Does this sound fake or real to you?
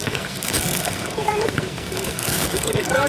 fake